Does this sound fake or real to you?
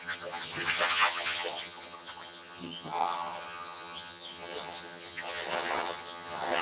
fake